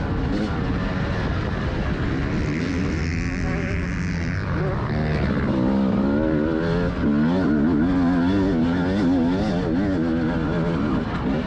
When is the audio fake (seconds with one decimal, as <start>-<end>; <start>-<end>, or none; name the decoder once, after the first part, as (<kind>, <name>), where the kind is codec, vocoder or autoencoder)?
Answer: none